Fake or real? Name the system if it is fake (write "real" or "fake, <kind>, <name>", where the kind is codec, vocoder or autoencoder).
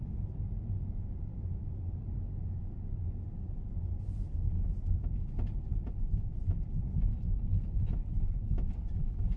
real